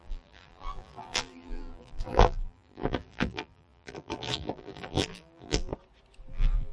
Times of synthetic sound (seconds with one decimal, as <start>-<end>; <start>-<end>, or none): 0.0-5.7; 6.3-6.7